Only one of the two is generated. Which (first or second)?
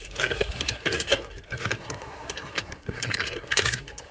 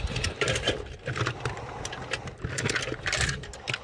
first